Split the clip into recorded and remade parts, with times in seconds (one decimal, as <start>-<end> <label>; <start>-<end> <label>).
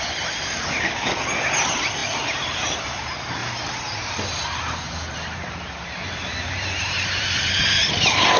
0.0-3.4 recorded; 3.4-7.6 remade; 7.6-8.4 recorded